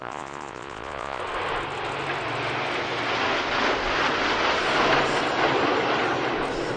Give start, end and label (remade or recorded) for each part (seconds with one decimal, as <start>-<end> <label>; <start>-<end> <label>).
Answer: 0.0-1.2 remade; 1.2-6.8 recorded